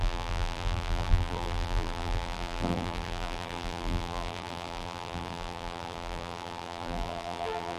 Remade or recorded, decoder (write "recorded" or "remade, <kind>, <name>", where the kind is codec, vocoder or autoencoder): remade, vocoder, BigVGAN v2